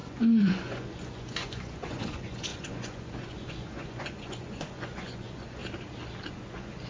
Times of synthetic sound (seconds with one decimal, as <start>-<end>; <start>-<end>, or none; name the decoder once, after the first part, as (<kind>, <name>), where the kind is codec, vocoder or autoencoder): 0.0-5.6 (vocoder, Vocos); 6.3-6.9